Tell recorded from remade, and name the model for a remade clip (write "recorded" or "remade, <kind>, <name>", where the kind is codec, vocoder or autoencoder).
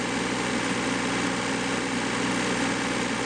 recorded